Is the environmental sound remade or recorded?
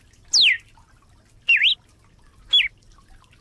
recorded